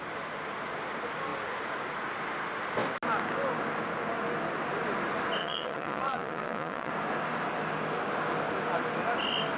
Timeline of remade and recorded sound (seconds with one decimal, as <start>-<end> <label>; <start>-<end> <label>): 0.0-5.4 recorded; 5.4-6.9 remade; 6.9-9.6 recorded